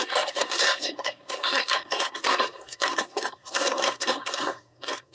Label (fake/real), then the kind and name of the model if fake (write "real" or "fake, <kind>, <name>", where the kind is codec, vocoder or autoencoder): fake, codec, SNAC